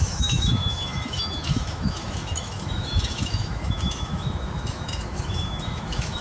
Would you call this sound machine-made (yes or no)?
yes